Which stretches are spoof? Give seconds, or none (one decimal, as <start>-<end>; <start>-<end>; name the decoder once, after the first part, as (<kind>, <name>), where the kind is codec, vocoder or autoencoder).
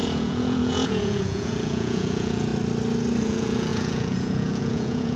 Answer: 0.0-2.5 (vocoder, Vocos); 3.2-5.2